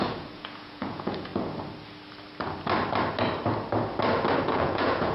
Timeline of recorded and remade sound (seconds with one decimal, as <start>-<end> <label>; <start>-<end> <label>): 0.0-1.3 remade; 1.3-4.4 recorded; 4.4-5.1 remade